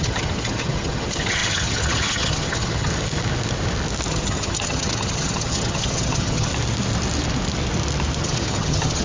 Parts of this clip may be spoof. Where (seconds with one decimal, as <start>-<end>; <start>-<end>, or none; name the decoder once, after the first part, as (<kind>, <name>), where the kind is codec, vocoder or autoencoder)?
0.0-2.9 (vocoder, HiFi-GAN); 4.1-6.5; 8.2-9.0